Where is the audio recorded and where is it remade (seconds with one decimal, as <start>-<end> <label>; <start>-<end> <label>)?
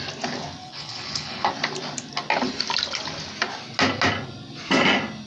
0.0-0.6 recorded; 0.6-1.5 remade; 1.5-5.3 recorded